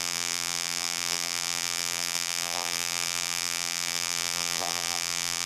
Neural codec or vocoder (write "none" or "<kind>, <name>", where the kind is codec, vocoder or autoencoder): vocoder, BigVGAN v2